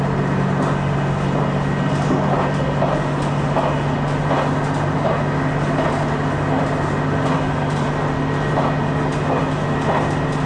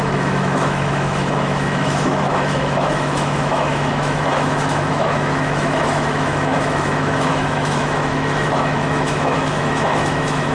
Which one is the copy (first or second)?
second